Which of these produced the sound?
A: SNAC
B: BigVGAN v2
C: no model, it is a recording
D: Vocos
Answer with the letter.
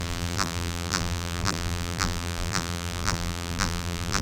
B